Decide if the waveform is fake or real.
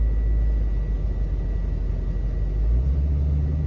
real